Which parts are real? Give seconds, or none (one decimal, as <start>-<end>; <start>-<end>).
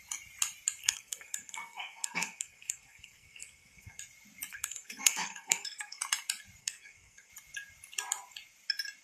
0.0-0.8; 4.0-4.5; 6.0-6.6; 7.3-9.0